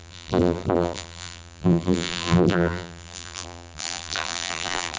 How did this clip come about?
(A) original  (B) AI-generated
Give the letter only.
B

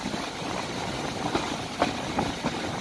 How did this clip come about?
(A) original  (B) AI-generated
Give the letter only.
A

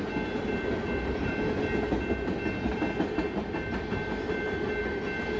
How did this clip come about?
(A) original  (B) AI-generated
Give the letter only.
A